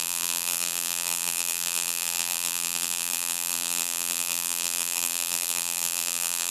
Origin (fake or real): fake